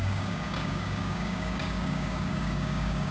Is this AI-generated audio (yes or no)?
yes